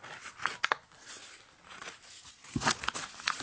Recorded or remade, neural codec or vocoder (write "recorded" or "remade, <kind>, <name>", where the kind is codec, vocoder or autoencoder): recorded